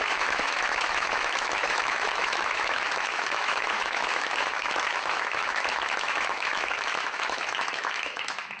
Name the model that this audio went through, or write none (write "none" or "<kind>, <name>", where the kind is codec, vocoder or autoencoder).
autoencoder, DAC-VAE